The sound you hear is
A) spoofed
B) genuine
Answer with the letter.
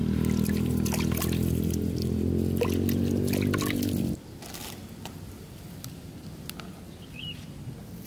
B